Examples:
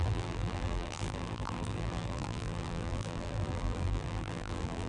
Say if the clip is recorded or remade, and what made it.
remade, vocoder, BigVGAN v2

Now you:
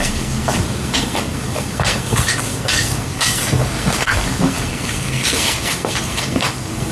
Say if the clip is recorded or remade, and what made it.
remade, codec, SNAC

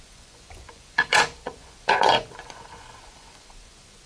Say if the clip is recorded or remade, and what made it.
remade, vocoder, Vocos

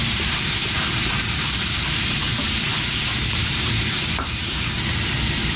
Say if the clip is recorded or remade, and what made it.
remade, vocoder, BigVGAN v2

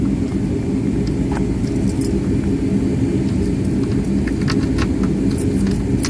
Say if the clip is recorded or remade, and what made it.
recorded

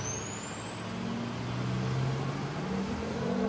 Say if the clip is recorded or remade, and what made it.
recorded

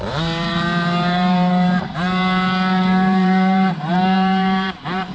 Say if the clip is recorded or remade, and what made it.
remade, vocoder, BigVGAN v2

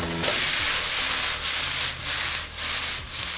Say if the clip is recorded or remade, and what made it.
recorded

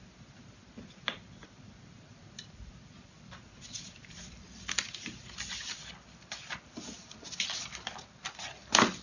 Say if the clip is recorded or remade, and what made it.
remade, vocoder, BigVGAN v2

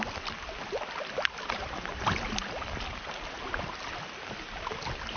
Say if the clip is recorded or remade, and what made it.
recorded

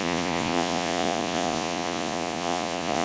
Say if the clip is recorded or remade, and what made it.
remade, vocoder, Vocos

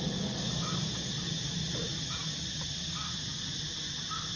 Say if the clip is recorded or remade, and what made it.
recorded